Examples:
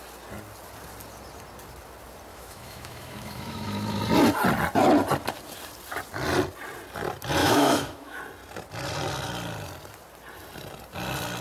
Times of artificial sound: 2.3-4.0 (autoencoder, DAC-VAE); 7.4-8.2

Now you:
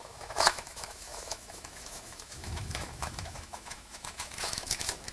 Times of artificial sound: 0.0-5.1 (autoencoder, DAC-VAE)

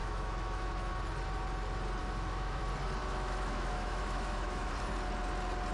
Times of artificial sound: 0.0-0.9 (autoencoder, DAC-VAE); 2.0-2.6; 3.0-4.7

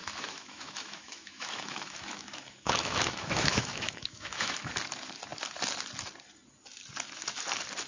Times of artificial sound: 0.0-4.7 (autoencoder, DAC-VAE)

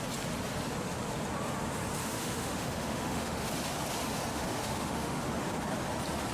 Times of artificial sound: 2.0-3.5 (autoencoder, DAC-VAE); 4.3-5.2

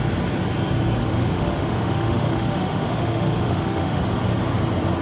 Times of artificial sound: 1.0-4.0 (autoencoder, DAC-VAE)